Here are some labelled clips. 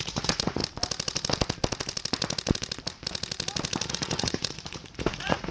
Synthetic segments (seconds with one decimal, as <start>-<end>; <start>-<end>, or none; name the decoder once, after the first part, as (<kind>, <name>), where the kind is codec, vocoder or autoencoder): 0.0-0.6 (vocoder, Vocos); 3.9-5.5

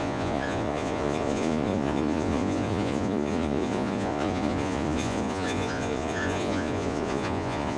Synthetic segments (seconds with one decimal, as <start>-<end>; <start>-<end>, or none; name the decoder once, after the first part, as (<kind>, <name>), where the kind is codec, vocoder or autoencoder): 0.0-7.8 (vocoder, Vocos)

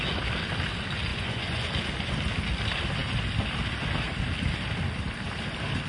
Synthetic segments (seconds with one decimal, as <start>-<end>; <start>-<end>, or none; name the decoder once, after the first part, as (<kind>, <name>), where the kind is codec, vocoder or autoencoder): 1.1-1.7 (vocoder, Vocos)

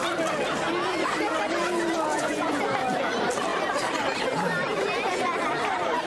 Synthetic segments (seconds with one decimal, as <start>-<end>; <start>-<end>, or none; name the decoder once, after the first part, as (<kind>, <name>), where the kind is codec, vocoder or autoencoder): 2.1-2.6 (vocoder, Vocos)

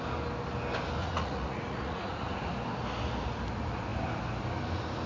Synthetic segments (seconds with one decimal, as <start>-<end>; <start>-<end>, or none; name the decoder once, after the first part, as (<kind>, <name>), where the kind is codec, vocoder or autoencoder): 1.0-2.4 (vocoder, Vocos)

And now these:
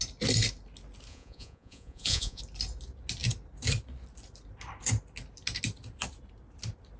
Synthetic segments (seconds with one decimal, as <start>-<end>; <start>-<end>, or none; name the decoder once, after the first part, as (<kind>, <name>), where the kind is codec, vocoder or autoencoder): 1.1-2.4 (vocoder, Vocos)

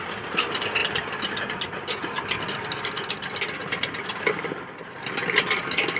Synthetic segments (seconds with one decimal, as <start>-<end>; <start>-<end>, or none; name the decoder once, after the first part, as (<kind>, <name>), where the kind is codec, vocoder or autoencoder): none

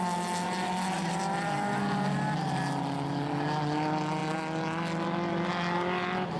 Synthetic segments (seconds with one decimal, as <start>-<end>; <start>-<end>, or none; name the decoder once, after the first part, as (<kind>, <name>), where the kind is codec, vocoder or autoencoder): none